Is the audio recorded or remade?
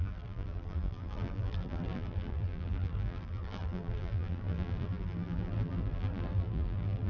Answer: remade